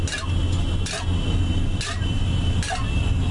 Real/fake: real